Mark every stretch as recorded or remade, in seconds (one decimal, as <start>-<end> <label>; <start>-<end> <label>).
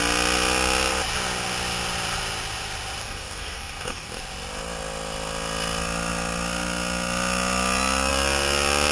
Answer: 0.0-3.0 recorded; 3.0-4.2 remade; 4.2-8.9 recorded